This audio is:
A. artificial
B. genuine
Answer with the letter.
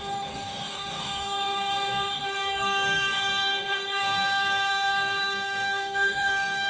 A